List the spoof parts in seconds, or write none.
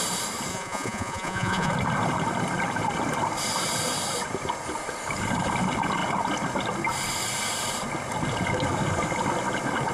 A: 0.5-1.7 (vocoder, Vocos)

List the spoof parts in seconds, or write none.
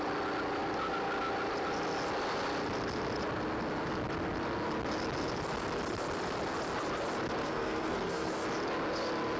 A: 7.4-8.3 (codec, SNAC)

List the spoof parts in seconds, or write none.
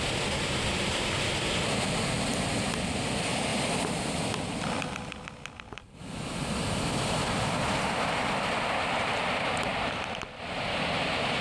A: none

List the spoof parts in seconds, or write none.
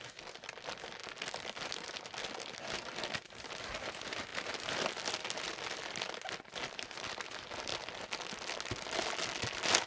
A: none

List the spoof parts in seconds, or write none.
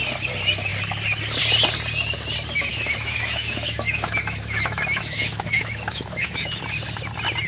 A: 2.7-6.6 (autoencoder, DAC-VAE)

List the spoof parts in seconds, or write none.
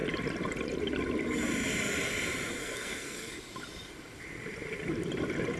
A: 2.6-3.3 (codec, SNAC)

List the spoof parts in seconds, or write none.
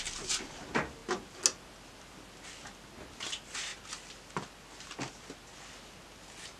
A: none